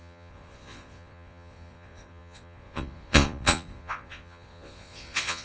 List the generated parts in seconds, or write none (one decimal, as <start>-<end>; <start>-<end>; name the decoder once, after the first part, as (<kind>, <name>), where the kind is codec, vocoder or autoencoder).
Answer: 0.0-5.4 (vocoder, Vocos)